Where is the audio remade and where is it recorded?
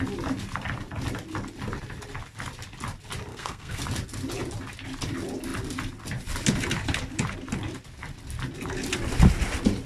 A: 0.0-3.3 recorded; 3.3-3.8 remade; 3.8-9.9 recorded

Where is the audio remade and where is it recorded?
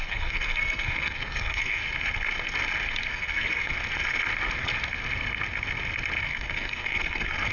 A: 0.0-1.8 remade; 1.8-3.1 recorded; 3.1-3.8 remade; 3.8-6.2 recorded; 6.2-7.5 remade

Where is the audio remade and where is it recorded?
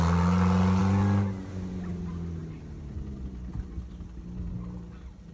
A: 0.0-5.3 recorded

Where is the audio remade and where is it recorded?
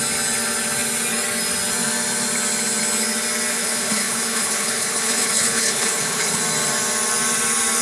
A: 0.0-3.5 recorded; 3.5-6.4 remade; 6.4-7.8 recorded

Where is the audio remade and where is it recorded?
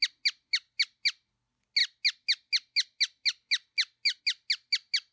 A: 0.0-5.1 recorded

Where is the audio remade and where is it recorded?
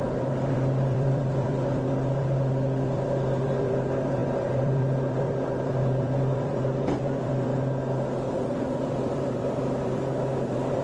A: 0.0-7.5 remade; 7.5-8.3 recorded; 8.3-10.8 remade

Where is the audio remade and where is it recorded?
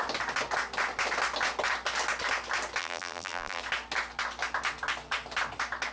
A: 0.0-2.8 recorded; 2.8-3.6 remade; 3.6-5.9 recorded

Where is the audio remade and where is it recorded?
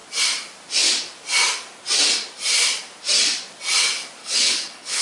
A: 0.0-4.2 recorded; 4.2-5.0 remade